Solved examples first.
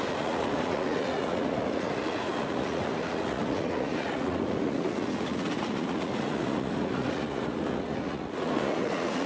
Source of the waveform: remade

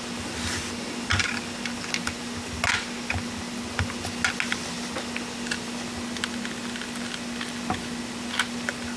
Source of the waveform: recorded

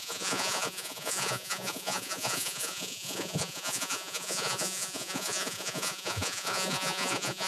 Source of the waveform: remade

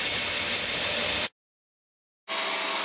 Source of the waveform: recorded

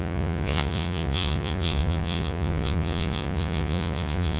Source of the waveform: remade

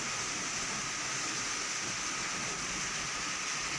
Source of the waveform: recorded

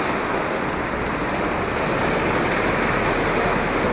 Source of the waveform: recorded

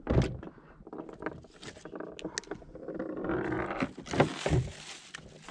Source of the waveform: recorded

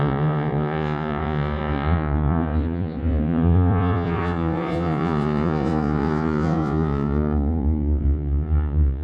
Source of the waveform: remade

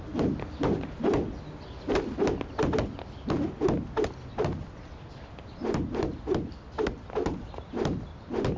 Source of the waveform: recorded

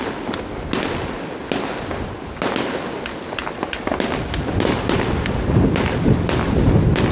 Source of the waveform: recorded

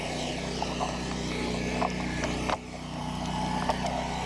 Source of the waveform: recorded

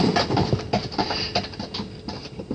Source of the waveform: recorded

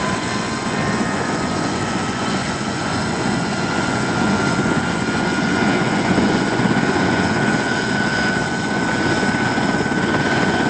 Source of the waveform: remade